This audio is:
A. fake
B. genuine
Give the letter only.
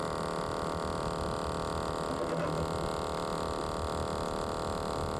B